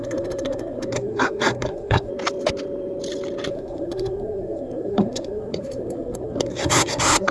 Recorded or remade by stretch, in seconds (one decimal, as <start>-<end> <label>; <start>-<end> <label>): 0.0-2.1 remade; 2.1-3.5 recorded; 3.5-7.3 remade